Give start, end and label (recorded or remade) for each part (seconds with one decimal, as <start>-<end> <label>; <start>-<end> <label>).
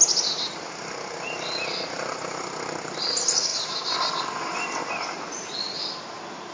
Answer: 0.0-6.5 recorded